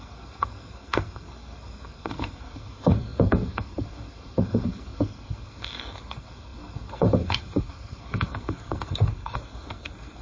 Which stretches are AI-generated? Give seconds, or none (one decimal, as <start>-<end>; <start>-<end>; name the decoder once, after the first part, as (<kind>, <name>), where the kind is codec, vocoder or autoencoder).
0.0-10.2 (codec, SNAC)